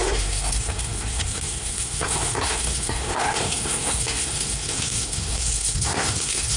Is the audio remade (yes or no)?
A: yes